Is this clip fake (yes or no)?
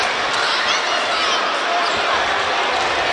no